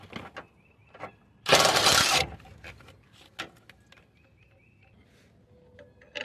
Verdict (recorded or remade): recorded